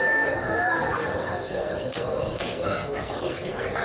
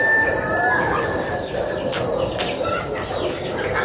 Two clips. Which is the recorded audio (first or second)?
second